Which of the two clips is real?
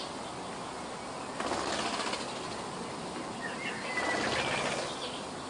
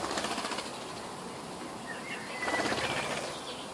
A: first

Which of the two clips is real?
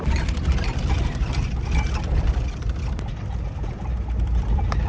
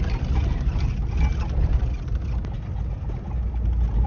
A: second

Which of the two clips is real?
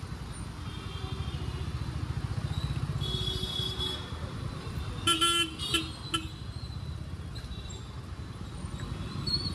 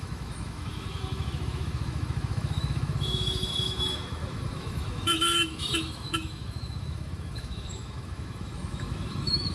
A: first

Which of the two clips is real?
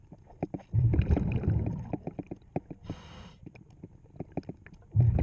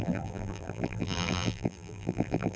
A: first